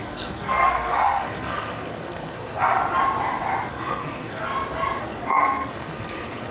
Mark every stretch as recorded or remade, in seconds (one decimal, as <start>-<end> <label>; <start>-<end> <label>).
0.0-2.8 remade; 2.8-3.7 recorded; 3.7-4.4 remade; 4.4-5.0 recorded; 5.0-6.5 remade